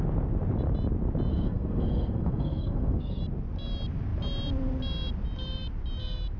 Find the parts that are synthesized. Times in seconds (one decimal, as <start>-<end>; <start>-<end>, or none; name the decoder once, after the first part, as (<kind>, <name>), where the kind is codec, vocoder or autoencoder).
1.3-3.2 (codec, SNAC)